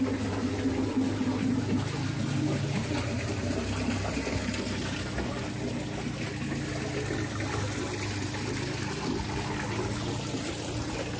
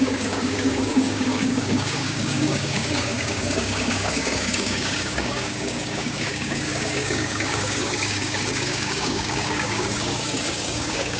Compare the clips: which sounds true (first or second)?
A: first